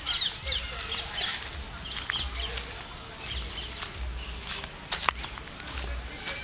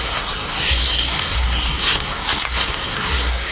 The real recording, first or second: first